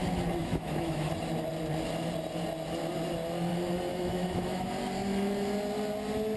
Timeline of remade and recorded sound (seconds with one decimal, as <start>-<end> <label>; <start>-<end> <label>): 0.0-0.4 recorded; 0.4-1.1 remade; 1.1-3.9 recorded; 3.9-4.7 remade; 4.7-6.4 recorded